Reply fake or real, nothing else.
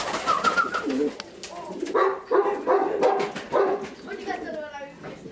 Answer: real